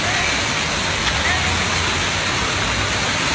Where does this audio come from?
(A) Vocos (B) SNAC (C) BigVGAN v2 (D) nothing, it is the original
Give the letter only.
D